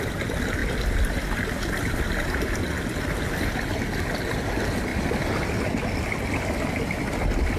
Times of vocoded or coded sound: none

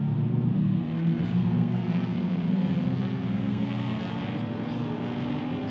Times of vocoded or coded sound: 0.6-4.0 (codec, SNAC)

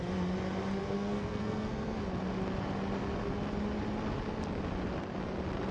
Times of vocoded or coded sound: 0.8-2.0 (codec, SNAC)